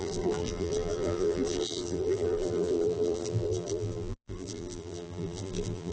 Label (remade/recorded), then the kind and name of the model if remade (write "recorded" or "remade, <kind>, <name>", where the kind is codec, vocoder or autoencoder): remade, vocoder, BigVGAN v2